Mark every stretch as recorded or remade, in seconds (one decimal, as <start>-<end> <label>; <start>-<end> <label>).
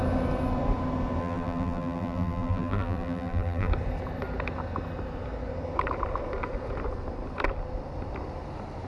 0.0-1.2 recorded; 1.2-3.7 remade; 3.7-8.9 recorded